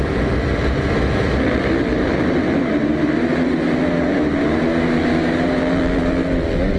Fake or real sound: real